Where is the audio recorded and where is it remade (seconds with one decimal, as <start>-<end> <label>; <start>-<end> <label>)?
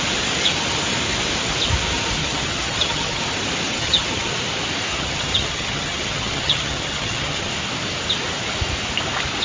0.0-2.2 recorded; 2.2-3.2 remade; 3.2-3.7 recorded; 3.7-4.3 remade; 4.3-4.9 recorded; 4.9-7.5 remade; 7.5-9.4 recorded